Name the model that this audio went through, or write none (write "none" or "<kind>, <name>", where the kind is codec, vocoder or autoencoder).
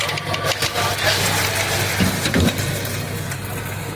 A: none